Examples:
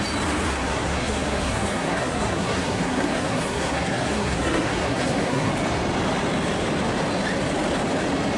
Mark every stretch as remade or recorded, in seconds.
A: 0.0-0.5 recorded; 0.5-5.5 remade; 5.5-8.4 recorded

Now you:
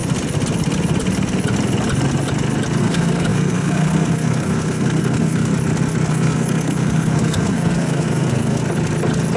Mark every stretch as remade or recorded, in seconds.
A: 0.0-2.8 recorded; 2.8-5.5 remade; 5.5-6.1 recorded; 6.1-8.6 remade; 8.6-9.4 recorded

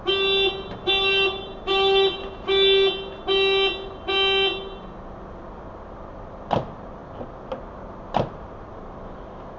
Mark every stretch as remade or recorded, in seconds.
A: 0.0-9.6 recorded

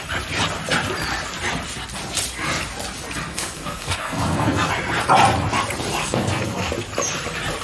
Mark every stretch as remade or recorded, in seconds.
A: 0.0-3.3 recorded; 3.3-4.7 remade; 4.7-6.0 recorded; 6.0-6.7 remade; 6.7-7.6 recorded

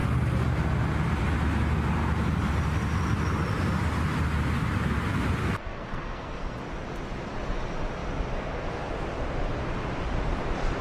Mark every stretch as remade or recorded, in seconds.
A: 0.0-5.4 recorded; 5.4-6.6 remade; 6.6-10.8 recorded

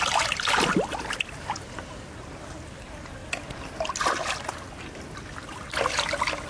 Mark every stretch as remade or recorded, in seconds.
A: 0.0-6.5 recorded